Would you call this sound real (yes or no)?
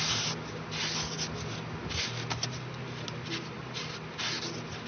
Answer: yes